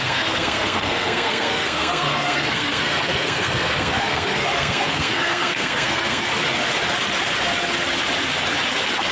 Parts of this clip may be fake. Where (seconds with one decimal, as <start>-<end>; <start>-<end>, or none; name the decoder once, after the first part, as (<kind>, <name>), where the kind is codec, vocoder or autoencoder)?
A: 0.0-6.3 (codec, SNAC)